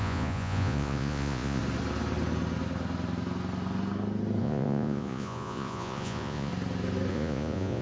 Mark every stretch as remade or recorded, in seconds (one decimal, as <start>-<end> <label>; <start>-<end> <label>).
0.0-1.6 remade; 1.6-4.4 recorded; 4.4-6.5 remade; 6.5-7.1 recorded; 7.1-7.8 remade